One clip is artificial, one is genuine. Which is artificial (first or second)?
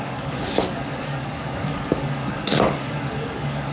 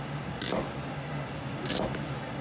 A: first